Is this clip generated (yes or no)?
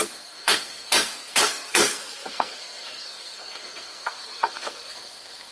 yes